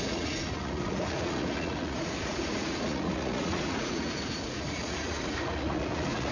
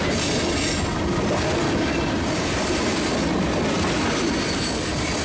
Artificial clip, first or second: first